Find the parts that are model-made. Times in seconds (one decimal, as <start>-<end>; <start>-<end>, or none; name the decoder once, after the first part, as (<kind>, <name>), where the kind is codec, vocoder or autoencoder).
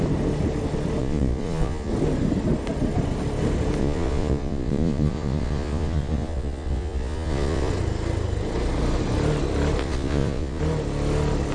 1.0-1.9 (vocoder, Vocos); 3.8-7.7; 9.8-10.6